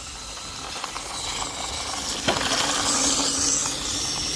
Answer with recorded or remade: recorded